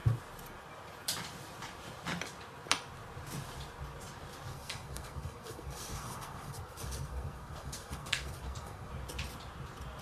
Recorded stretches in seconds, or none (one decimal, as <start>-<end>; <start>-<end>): 0.0-4.5; 8.9-10.0